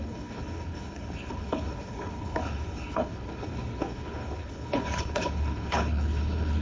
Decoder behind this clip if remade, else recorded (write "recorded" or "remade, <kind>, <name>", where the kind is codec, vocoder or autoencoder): remade, codec, HILCodec